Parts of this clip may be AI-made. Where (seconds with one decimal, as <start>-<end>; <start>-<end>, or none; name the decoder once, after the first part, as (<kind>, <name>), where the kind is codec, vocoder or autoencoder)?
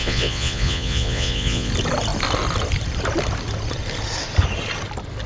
0.0-1.7 (vocoder, Vocos)